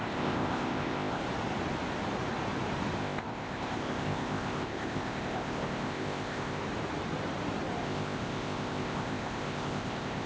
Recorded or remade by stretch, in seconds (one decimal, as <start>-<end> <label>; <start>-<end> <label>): 0.0-1.2 remade; 1.2-3.0 recorded; 3.0-6.6 remade; 6.6-7.8 recorded; 7.8-10.3 remade